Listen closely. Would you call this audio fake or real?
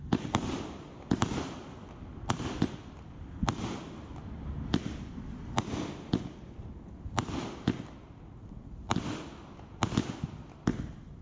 real